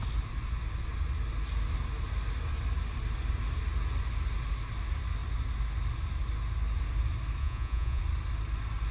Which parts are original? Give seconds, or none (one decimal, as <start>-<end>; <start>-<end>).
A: 0.0-7.4; 8.0-8.9